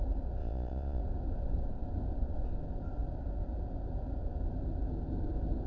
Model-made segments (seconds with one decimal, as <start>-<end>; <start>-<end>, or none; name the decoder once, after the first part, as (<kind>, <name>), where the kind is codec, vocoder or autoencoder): 0.4-1.0 (vocoder, Vocos)

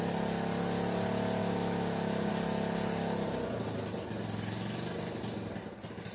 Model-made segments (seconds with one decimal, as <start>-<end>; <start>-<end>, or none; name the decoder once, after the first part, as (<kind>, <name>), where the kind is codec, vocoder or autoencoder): 1.4-2.3 (autoencoder, DAC-VAE)